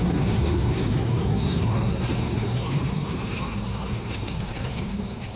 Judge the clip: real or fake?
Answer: fake